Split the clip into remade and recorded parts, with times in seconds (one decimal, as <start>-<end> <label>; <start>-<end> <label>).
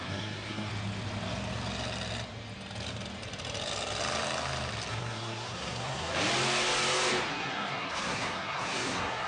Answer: 0.0-0.7 remade; 0.7-4.9 recorded; 4.9-6.1 remade; 6.1-7.3 recorded; 7.3-9.3 remade